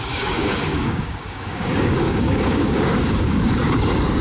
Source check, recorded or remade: remade